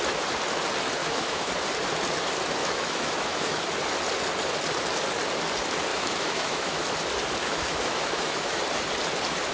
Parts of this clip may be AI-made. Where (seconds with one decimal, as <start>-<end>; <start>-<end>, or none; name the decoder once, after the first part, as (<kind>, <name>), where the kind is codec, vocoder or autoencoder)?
1.0-1.5 (autoencoder, DAC-VAE); 2.6-3.6; 5.9-6.8; 7.4-8.6